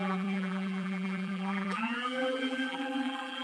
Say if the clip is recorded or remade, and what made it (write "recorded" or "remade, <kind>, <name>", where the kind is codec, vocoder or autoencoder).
remade, vocoder, BigVGAN v2